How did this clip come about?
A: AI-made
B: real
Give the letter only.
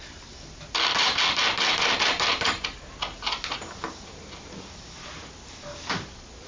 B